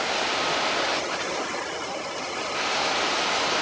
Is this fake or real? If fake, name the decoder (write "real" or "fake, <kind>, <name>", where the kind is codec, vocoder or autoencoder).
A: real